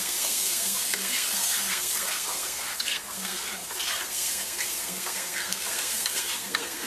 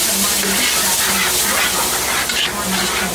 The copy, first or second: first